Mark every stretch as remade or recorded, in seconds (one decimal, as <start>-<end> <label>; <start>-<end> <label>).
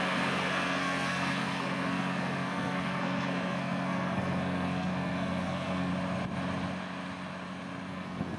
0.0-5.9 remade; 5.9-7.9 recorded; 7.9-8.4 remade